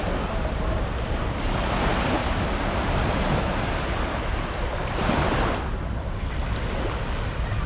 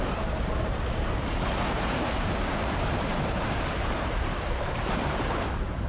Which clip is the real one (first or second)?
first